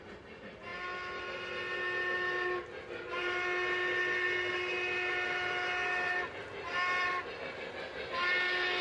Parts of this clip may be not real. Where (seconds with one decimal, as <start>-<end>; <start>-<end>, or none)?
none